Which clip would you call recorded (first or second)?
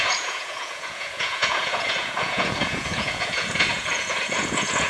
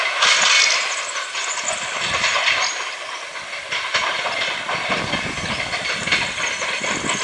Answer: second